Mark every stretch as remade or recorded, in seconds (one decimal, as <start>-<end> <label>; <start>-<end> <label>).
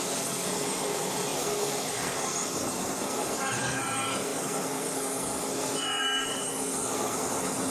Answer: 0.0-7.7 remade